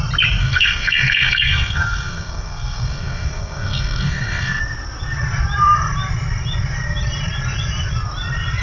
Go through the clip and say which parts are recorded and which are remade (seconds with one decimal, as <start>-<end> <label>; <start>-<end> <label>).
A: 0.0-0.4 recorded; 0.4-4.6 remade; 4.6-8.6 recorded